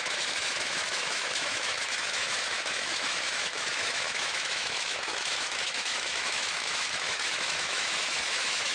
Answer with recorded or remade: remade